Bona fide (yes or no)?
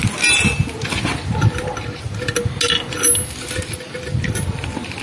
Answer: yes